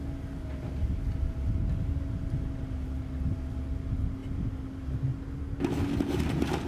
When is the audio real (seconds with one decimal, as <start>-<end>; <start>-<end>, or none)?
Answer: 0.0-6.7